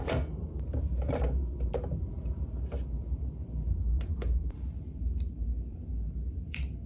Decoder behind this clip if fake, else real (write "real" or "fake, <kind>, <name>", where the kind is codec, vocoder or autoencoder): fake, vocoder, BigVGAN v2